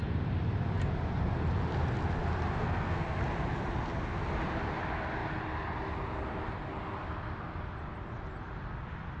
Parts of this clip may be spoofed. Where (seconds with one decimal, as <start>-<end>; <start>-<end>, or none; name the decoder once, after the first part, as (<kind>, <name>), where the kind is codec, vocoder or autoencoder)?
2.5-3.2 (codec, SNAC)